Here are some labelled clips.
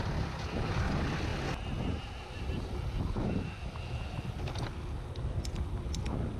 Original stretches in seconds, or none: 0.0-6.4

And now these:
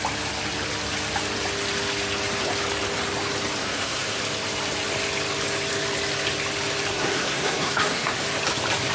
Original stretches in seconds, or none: 0.0-3.6; 4.2-6.9; 8.2-8.9

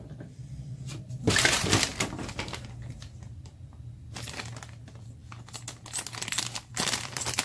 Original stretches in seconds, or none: 1.9-4.8; 5.2-6.7